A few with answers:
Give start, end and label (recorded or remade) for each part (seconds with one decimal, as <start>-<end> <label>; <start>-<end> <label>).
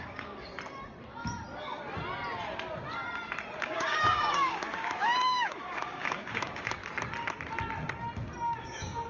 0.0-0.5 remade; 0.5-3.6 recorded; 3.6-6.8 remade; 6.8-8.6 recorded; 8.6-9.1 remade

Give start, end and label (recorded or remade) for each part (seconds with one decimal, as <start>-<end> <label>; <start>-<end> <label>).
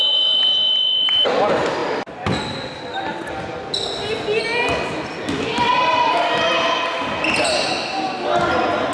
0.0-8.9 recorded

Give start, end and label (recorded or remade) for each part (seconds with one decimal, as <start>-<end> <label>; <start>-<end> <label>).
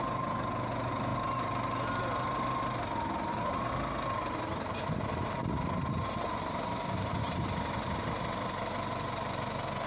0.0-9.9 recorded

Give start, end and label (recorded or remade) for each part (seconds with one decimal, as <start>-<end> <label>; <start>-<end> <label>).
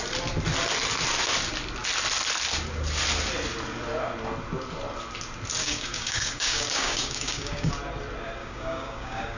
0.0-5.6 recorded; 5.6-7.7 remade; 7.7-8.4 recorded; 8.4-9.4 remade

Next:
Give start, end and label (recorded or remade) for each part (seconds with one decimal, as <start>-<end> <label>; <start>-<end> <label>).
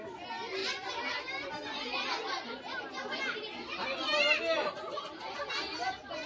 0.0-6.3 recorded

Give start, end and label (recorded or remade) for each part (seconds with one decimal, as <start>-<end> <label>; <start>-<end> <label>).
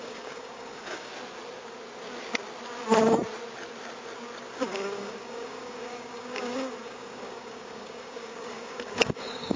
0.0-1.1 remade; 1.1-4.5 recorded; 4.5-9.6 remade